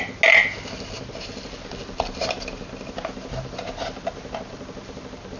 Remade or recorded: recorded